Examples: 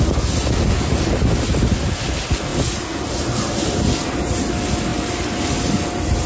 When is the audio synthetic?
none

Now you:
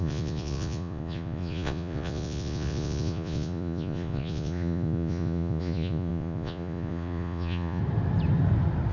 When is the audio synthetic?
0.0-7.8 (vocoder, Vocos)

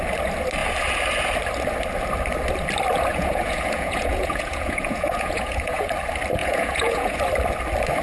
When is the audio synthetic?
3.1-5.9 (vocoder, Vocos); 6.4-7.2